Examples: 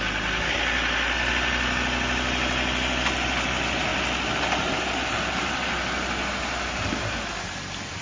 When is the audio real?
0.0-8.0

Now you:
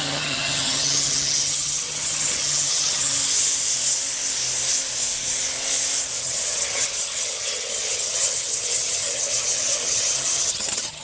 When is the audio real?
3.2-6.2

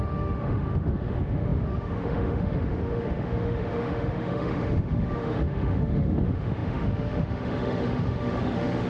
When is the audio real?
none

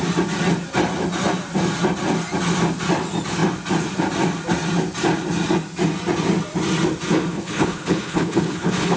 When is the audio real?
0.0-7.3

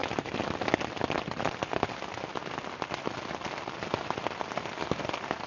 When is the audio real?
0.0-5.5

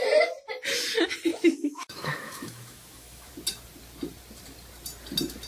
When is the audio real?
0.0-1.3; 3.3-5.5

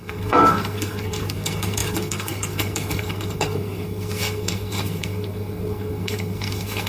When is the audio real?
none